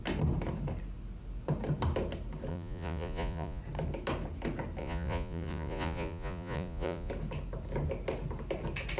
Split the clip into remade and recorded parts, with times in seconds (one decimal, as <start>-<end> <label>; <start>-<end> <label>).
0.0-2.5 recorded; 2.5-3.6 remade; 3.6-4.8 recorded; 4.8-7.1 remade; 7.1-9.0 recorded